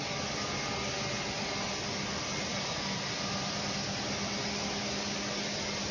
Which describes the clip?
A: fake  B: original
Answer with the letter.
B